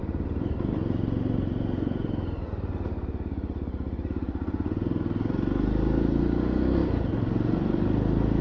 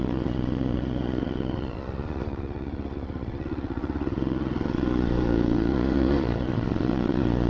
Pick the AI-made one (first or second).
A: second